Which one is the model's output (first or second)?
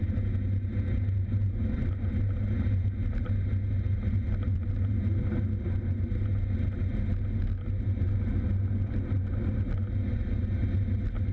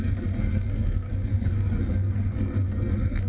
second